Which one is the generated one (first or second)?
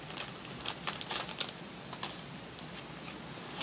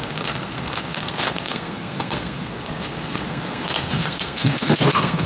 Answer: second